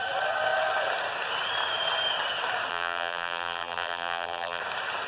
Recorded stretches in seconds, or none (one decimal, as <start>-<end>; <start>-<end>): 0.0-2.7; 4.6-5.1